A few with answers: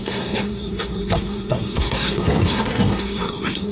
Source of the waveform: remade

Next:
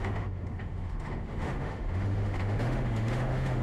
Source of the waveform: remade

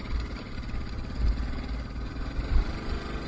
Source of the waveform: recorded